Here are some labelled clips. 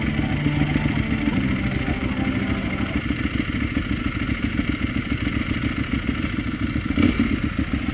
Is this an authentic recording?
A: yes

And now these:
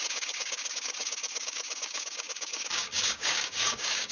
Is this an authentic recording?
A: no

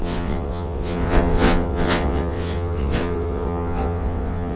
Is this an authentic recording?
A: no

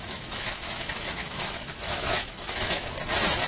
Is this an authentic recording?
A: no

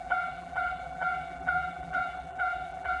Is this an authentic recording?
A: no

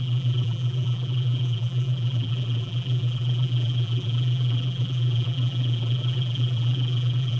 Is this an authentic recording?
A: no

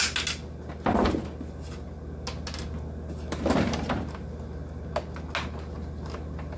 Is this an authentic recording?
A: yes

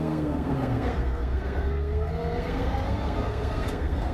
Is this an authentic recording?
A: no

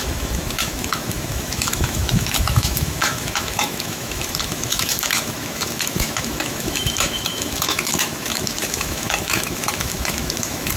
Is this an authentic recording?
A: no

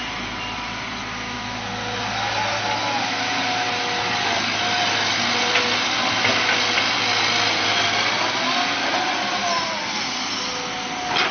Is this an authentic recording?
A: yes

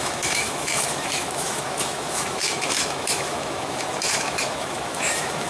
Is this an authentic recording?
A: no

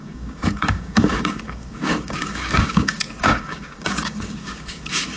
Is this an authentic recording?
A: no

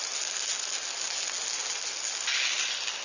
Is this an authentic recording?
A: yes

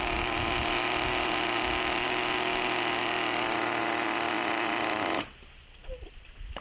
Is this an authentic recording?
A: yes